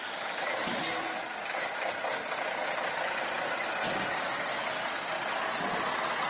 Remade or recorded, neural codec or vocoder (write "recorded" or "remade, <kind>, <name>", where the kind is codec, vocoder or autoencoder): recorded